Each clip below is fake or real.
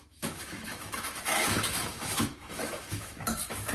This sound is fake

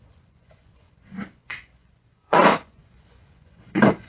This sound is fake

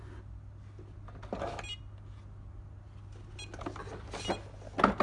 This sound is real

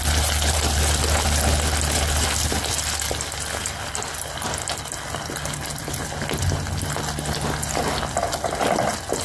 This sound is real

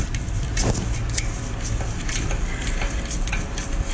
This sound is real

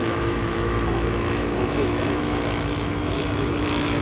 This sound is fake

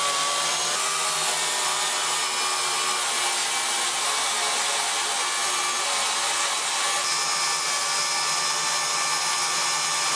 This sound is real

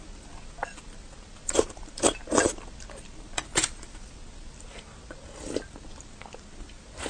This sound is real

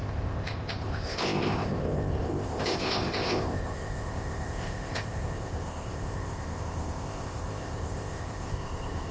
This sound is fake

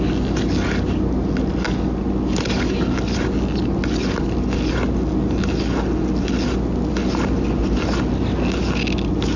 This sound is real